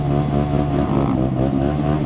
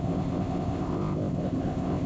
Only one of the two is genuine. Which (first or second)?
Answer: first